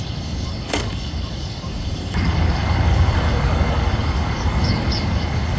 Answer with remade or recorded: remade